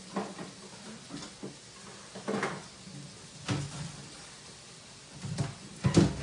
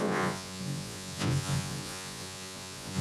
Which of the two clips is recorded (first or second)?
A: first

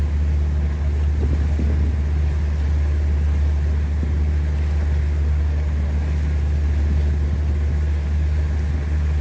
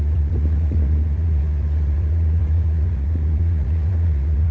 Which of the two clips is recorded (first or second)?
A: first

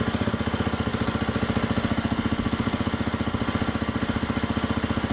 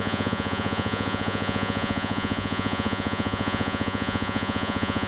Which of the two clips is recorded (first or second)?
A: first